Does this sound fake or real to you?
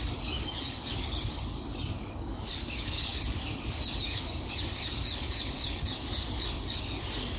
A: fake